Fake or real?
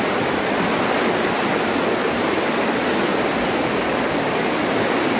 real